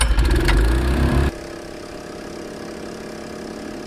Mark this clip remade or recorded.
recorded